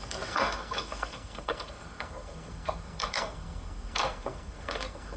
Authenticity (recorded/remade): remade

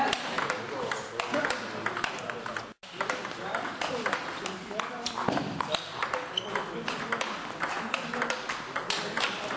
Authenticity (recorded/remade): recorded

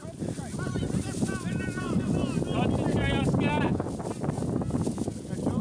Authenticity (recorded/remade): recorded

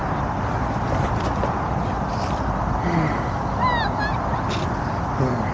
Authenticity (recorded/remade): recorded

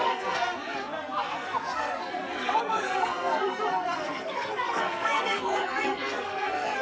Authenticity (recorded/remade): remade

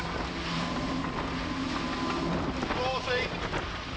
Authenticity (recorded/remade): recorded